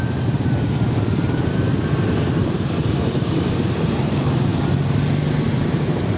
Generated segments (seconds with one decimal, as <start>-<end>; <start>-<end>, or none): 0.0-4.5; 5.5-6.2